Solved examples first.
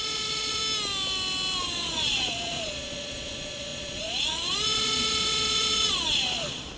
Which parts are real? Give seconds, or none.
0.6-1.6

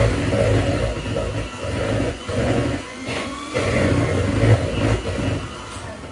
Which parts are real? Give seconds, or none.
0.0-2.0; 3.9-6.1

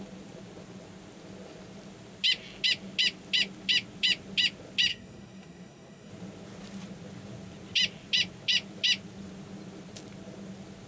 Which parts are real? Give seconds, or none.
0.0-4.9; 6.1-10.9

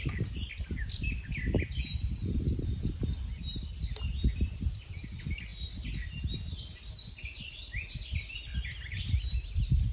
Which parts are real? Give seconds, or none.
0.0-9.9